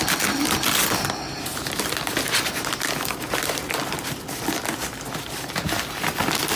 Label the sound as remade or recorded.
recorded